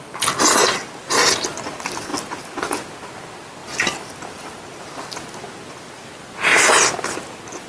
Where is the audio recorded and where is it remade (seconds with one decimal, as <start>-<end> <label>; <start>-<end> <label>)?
0.0-7.7 recorded